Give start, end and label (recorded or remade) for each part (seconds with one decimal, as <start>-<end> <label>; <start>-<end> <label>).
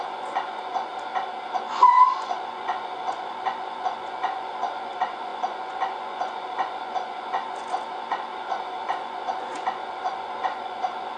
0.0-1.1 remade; 1.1-1.6 recorded; 1.6-11.2 remade